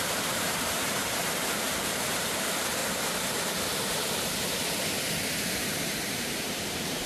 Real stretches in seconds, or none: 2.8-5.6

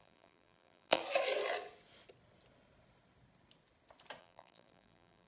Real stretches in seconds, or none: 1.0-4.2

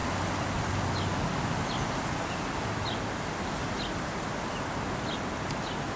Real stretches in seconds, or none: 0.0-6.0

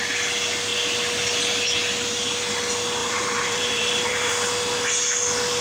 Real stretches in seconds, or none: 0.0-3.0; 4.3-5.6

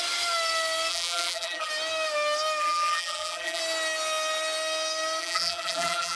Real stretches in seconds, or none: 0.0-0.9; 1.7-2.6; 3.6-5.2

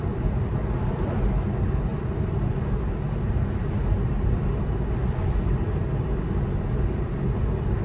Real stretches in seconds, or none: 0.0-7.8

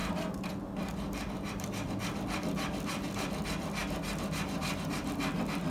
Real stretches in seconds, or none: 0.0-0.9; 3.8-5.7